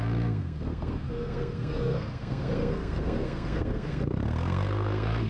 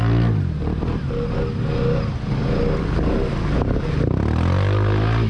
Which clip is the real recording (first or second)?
second